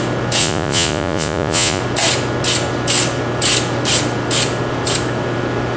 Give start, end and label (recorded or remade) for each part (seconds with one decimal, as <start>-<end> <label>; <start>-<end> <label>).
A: 0.0-0.4 recorded; 0.4-1.8 remade; 1.8-5.8 recorded